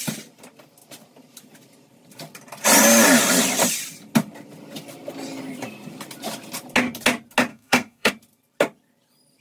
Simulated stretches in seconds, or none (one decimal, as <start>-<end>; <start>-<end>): 7.5-8.1